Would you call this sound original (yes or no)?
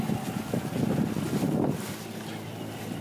no